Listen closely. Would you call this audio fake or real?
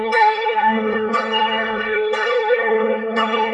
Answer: fake